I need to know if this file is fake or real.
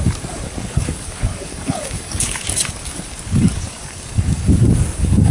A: fake